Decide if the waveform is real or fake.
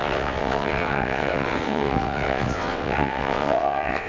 fake